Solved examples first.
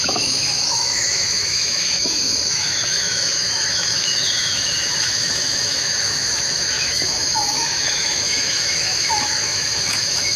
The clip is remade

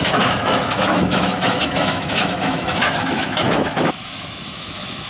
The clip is remade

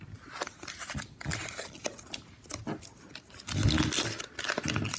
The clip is recorded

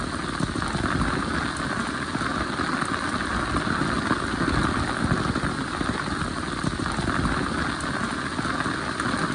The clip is recorded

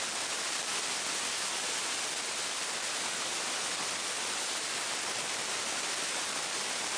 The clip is recorded